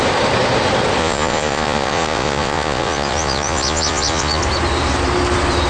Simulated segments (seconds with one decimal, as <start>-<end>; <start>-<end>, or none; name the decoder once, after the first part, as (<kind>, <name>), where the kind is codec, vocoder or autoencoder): 1.0-4.4 (vocoder, Vocos)